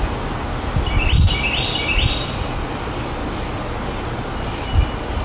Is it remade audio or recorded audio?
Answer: recorded